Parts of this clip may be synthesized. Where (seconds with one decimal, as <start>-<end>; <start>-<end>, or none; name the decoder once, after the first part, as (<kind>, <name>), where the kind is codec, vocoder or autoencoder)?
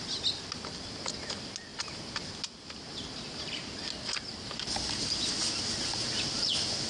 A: none